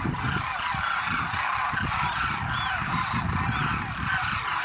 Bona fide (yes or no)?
yes